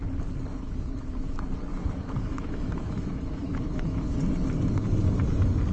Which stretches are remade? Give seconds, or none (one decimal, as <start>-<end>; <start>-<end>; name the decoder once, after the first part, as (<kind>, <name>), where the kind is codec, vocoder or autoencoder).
0.5-1.4 (autoencoder, DAC-VAE); 1.8-4.2

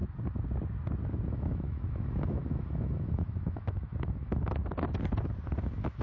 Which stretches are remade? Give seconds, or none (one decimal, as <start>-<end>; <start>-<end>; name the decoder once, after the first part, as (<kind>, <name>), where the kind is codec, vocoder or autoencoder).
1.3-4.6 (autoencoder, DAC-VAE); 5.6-6.0

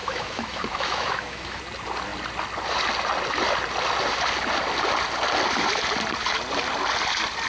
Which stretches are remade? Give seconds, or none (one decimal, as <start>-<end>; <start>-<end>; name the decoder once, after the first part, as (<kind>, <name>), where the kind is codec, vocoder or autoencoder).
0.0-1.6 (autoencoder, DAC-VAE)

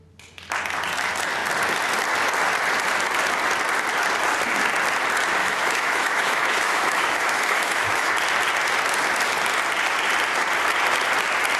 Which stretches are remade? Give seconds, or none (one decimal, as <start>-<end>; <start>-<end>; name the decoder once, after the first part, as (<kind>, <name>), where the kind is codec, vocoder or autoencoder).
5.4-8.1 (autoencoder, DAC-VAE)

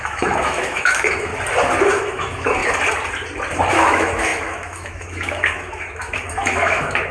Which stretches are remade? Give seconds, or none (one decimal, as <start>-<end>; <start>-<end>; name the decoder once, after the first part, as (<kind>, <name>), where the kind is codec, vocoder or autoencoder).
0.0-1.3 (autoencoder, DAC-VAE); 1.9-2.6; 3.7-7.1